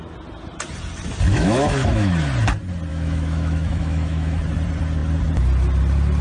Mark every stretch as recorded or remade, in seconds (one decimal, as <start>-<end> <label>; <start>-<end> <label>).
0.0-1.3 recorded; 1.3-2.1 remade; 2.1-2.9 recorded; 2.9-4.4 remade; 4.4-6.2 recorded